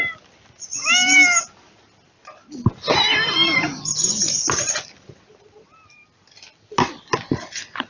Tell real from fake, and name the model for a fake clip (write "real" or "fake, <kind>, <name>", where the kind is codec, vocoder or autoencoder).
real